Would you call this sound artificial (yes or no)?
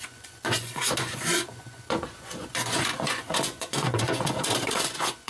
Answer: yes